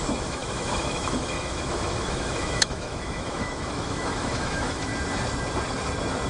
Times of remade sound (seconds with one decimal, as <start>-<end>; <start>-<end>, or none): 0.0-4.9